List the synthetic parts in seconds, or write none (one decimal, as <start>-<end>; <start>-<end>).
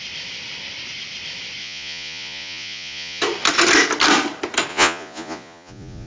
1.6-3.2; 4.7-6.1